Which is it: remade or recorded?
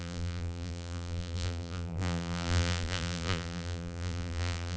remade